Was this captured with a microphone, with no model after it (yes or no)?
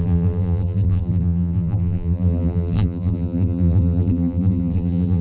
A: no